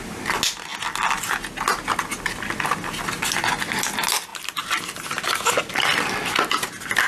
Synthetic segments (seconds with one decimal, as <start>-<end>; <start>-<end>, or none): none